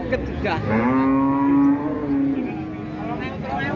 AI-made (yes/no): no